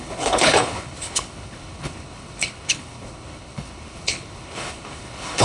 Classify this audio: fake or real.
fake